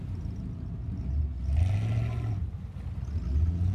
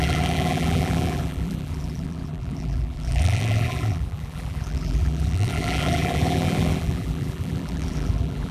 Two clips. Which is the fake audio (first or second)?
second